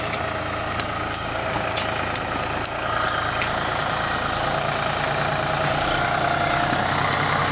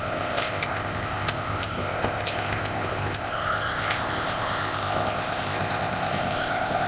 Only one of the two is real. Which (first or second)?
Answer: first